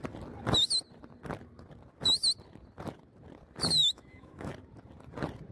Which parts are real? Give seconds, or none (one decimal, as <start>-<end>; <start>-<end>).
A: 0.0-3.8; 4.5-5.5